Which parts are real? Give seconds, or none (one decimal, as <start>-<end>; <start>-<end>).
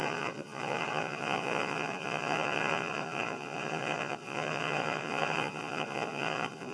none